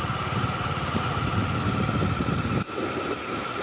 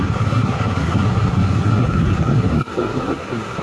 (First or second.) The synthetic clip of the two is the second